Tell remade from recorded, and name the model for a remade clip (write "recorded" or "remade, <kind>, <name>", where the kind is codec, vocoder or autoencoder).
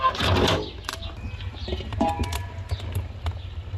recorded